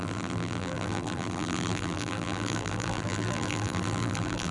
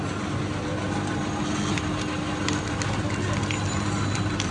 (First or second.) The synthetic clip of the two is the first